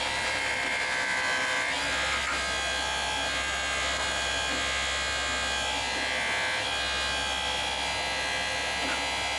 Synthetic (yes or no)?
no